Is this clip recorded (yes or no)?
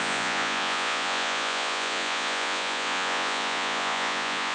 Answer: no